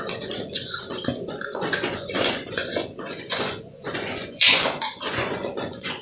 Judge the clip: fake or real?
fake